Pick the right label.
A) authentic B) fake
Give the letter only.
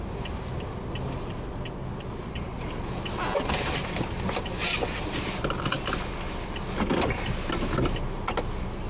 A